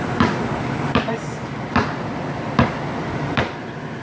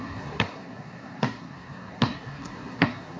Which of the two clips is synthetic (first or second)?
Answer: second